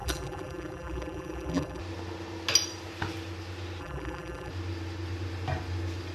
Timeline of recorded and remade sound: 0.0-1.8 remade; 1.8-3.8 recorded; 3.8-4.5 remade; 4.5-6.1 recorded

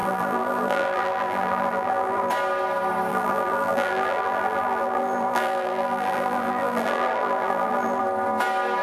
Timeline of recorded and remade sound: 0.0-2.3 remade; 2.3-3.1 recorded; 3.1-8.0 remade; 8.0-8.8 recorded

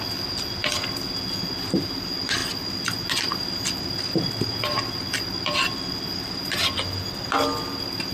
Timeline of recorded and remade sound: 0.0-8.1 recorded

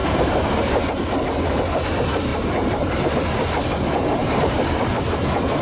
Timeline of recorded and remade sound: 0.0-0.8 remade; 0.8-2.3 recorded; 2.3-3.1 remade; 3.1-4.2 recorded; 4.2-5.0 remade; 5.0-5.6 recorded

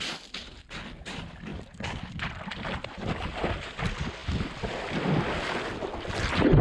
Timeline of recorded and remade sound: 0.0-6.6 recorded